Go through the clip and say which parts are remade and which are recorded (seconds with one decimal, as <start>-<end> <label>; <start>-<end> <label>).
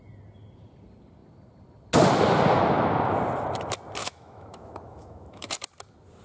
0.0-4.0 recorded; 4.0-5.5 remade; 5.5-6.2 recorded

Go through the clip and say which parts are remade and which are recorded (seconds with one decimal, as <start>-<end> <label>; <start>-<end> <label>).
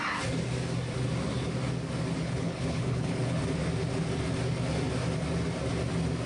0.0-2.2 recorded; 2.2-3.4 remade; 3.4-6.3 recorded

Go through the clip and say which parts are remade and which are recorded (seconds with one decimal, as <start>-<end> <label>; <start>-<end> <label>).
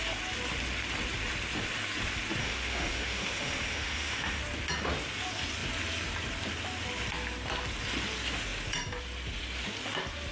0.0-2.4 recorded; 2.4-4.4 remade; 4.4-10.3 recorded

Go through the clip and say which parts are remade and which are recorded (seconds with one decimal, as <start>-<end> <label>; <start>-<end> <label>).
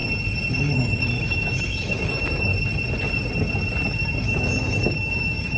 0.0-0.6 recorded; 0.6-2.5 remade; 2.5-4.2 recorded; 4.2-5.6 remade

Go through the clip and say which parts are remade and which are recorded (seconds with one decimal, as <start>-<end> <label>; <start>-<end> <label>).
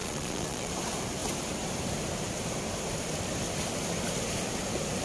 0.0-0.7 remade; 0.7-5.0 recorded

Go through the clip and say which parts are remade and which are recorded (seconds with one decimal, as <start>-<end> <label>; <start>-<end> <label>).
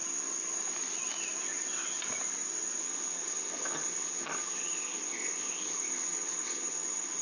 0.0-2.8 recorded; 2.8-7.2 remade